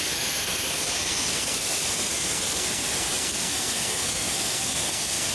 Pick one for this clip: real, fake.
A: fake